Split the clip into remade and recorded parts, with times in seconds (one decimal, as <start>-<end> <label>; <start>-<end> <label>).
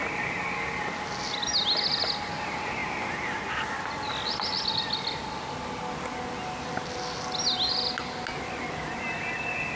0.0-9.8 recorded